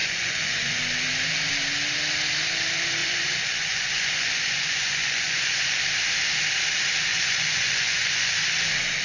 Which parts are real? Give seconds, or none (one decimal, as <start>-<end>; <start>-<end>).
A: 0.8-3.0; 5.8-7.1; 8.3-9.0